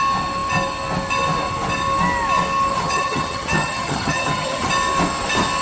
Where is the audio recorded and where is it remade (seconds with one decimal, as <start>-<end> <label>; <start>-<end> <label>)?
0.0-2.7 recorded; 2.7-4.7 remade; 4.7-5.6 recorded